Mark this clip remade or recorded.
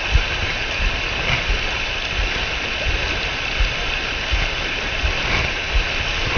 recorded